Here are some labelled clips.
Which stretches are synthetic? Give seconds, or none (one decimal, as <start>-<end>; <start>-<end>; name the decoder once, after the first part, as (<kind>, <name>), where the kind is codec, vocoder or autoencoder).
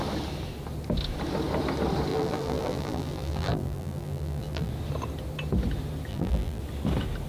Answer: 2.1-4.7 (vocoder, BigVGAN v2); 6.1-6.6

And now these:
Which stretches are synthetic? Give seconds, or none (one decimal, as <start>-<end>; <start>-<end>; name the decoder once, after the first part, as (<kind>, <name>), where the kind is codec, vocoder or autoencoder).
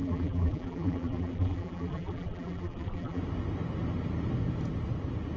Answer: 0.0-3.2 (vocoder, BigVGAN v2)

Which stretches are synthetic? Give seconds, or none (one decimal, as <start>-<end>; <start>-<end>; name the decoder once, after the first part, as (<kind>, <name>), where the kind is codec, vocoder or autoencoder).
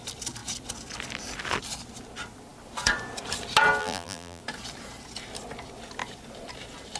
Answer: 3.8-4.4 (vocoder, BigVGAN v2)